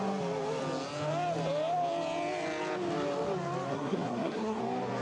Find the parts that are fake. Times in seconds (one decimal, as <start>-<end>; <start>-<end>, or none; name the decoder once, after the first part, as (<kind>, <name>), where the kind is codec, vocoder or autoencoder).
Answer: 3.7-4.6 (codec, SNAC)